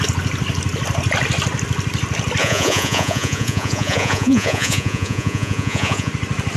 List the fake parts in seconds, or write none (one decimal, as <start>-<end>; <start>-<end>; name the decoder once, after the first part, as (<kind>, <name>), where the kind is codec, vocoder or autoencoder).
2.4-6.1 (vocoder, Vocos)